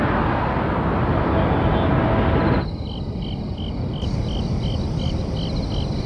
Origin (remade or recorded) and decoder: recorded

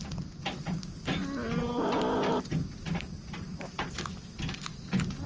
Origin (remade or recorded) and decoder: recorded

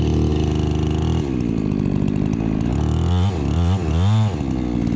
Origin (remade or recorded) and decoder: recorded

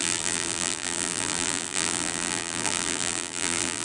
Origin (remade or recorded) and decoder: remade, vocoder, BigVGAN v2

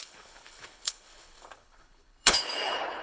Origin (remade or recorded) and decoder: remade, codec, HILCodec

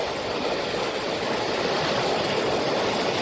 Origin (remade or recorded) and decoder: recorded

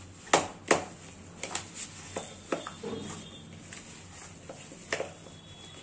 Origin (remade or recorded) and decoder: recorded